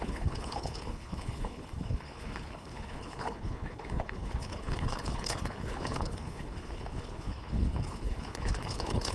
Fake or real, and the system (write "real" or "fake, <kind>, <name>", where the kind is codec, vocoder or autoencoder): fake, codec, HILCodec